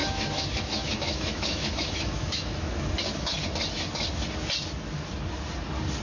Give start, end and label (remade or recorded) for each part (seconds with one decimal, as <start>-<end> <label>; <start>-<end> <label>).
0.0-2.9 remade; 2.9-6.0 recorded